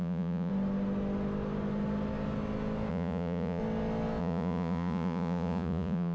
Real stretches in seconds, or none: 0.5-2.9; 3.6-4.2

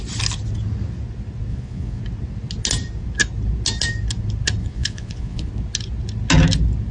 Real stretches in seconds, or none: 0.0-1.5; 2.0-4.6; 5.5-6.9

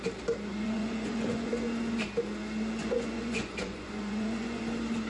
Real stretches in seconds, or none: 0.0-0.5; 1.5-2.8; 4.6-5.1

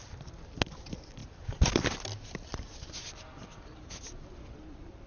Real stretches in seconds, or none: 0.0-5.1